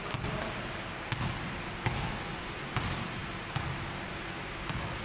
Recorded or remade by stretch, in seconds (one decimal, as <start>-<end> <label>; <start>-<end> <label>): 0.0-5.0 recorded